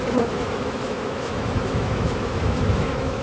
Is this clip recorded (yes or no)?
no